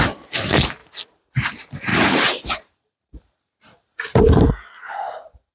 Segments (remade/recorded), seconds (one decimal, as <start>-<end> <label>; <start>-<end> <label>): 0.0-1.9 recorded; 1.9-4.5 remade; 4.5-5.5 recorded